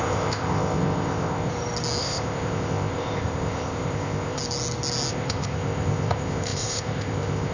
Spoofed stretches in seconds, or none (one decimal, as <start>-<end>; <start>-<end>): 0.0-1.5; 2.0-4.4; 5.1-7.5